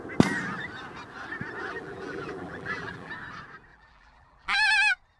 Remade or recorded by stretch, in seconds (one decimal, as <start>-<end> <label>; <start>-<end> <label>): 0.0-1.7 recorded; 1.7-3.1 remade; 3.1-3.7 recorded; 3.7-4.7 remade; 4.7-5.2 recorded